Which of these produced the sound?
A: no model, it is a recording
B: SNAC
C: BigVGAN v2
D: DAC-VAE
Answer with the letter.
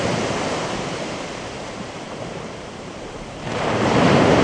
C